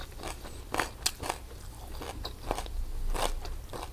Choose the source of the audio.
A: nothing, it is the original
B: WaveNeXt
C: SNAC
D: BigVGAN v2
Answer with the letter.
A